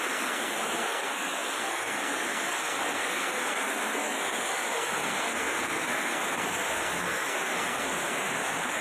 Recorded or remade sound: remade